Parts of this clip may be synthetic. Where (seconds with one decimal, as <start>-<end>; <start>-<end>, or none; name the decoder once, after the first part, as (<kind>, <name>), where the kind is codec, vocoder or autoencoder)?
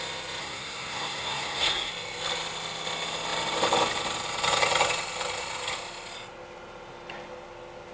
0.4-1.9 (codec, SNAC)